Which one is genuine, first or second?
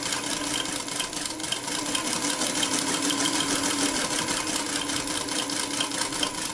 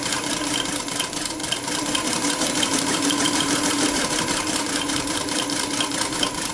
first